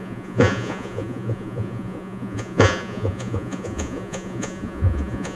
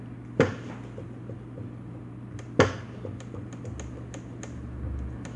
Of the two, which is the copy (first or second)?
first